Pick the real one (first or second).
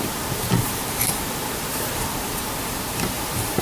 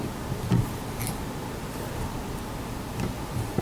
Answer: second